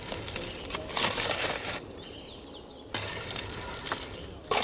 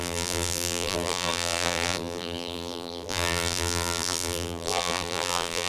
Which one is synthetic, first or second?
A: second